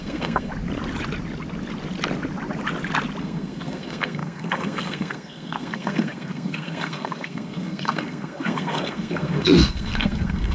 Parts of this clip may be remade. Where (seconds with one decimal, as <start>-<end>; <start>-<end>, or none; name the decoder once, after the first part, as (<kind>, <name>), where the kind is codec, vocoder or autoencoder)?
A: 0.0-0.5 (codec, SNAC); 3.2-10.5